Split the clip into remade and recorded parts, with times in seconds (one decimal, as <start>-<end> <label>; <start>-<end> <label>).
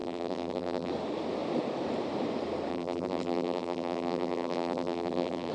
0.0-0.9 remade; 0.9-2.7 recorded; 2.7-5.5 remade